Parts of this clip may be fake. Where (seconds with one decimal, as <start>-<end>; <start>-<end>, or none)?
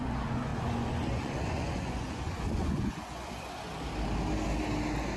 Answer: 0.0-3.7